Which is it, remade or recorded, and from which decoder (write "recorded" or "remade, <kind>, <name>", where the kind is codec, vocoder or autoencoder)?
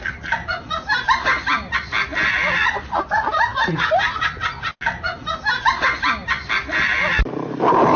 recorded